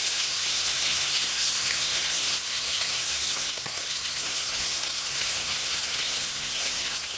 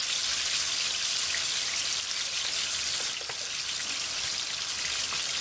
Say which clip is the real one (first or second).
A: second